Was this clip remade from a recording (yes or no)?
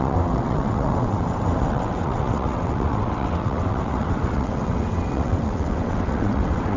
yes